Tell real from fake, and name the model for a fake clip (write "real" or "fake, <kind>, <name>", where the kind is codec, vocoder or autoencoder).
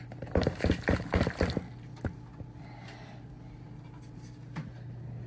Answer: real